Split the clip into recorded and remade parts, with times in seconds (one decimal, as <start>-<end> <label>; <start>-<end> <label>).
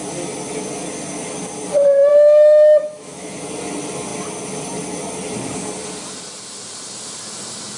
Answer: 0.0-2.1 recorded; 2.1-3.3 remade; 3.3-7.8 recorded